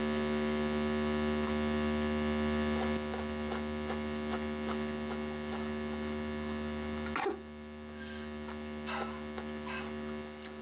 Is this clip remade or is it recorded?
recorded